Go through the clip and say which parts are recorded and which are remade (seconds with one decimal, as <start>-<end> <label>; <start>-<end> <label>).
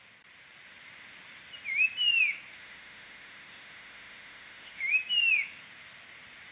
0.0-2.6 recorded; 2.6-4.8 remade; 4.8-6.5 recorded